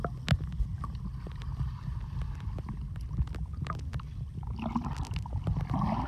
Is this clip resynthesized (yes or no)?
no